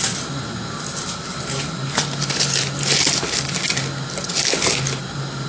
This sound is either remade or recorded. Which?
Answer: recorded